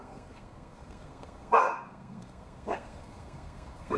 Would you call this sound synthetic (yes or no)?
yes